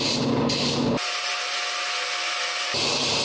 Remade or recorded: recorded